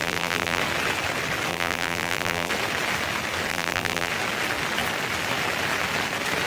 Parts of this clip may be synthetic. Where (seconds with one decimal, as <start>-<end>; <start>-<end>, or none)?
0.0-0.6; 1.5-2.5; 3.5-4.1